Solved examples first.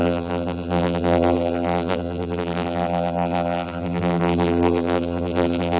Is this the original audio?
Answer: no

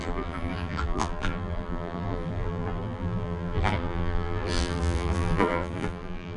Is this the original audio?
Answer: no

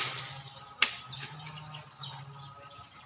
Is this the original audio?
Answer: no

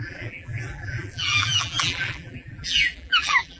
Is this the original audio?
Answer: no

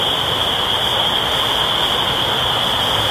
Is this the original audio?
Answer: yes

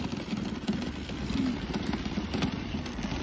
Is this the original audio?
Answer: no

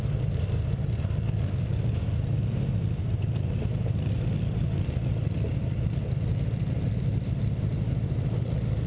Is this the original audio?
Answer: no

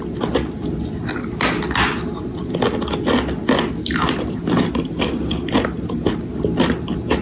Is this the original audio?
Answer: yes